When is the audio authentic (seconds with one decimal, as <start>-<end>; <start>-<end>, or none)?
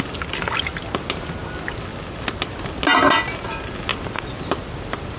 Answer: 0.0-5.2